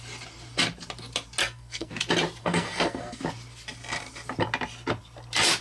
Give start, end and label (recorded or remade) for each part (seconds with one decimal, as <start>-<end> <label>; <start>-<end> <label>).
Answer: 0.0-1.4 recorded; 1.4-1.9 remade; 1.9-2.4 recorded; 2.4-3.2 remade; 3.2-5.6 recorded